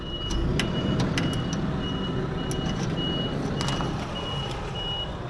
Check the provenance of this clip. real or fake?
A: real